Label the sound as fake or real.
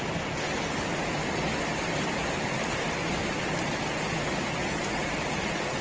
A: real